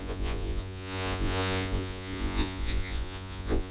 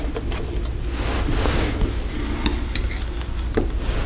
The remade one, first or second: first